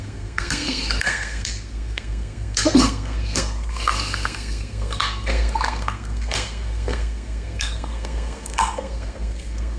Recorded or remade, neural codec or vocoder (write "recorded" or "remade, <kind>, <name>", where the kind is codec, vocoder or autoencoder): remade, codec, SNAC